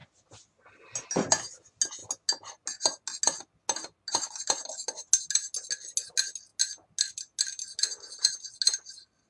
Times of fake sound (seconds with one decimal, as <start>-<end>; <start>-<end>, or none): none